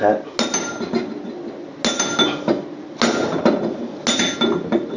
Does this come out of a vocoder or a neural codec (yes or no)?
no